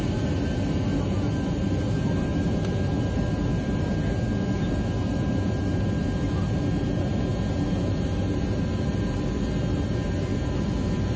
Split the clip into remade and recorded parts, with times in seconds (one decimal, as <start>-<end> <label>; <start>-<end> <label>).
0.0-11.2 recorded

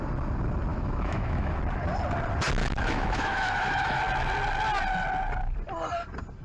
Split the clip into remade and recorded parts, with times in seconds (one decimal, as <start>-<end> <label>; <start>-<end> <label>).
0.0-0.7 recorded; 0.7-1.6 remade; 1.6-2.6 recorded; 2.6-4.0 remade; 4.0-6.4 recorded

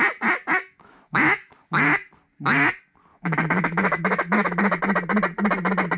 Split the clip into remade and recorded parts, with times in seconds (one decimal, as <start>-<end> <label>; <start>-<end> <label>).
0.0-0.6 recorded; 0.6-1.5 remade; 1.5-3.1 recorded; 3.1-4.8 remade; 4.8-6.0 recorded